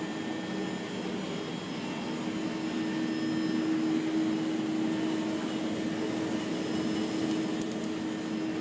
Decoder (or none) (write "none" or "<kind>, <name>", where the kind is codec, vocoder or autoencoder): none